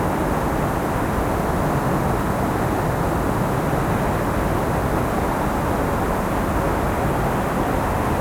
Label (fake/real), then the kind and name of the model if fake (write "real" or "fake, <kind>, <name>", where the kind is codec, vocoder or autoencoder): real